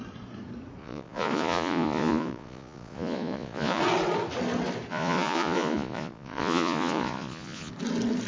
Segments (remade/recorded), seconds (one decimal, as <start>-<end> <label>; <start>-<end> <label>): 0.0-0.8 recorded; 0.8-3.8 remade; 3.8-4.9 recorded; 4.9-7.7 remade; 7.7-8.3 recorded